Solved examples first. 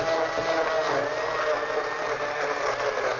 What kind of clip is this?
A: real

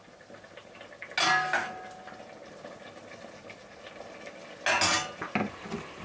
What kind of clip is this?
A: real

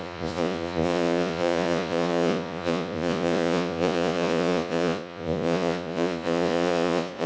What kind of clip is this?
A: fake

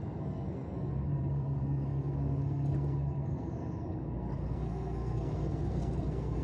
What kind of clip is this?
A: fake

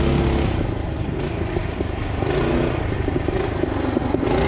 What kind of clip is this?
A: real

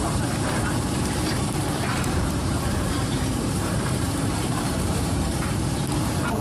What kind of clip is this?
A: fake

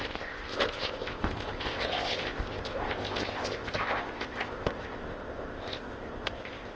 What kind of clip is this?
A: fake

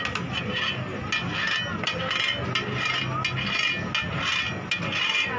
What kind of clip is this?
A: real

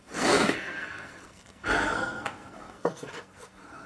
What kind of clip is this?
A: fake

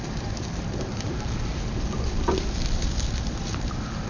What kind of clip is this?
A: fake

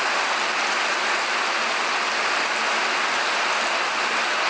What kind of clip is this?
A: real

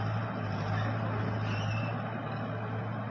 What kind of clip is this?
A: real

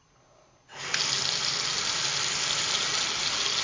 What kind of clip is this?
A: real